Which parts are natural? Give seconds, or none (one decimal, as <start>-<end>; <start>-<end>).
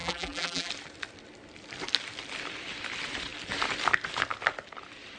0.7-5.2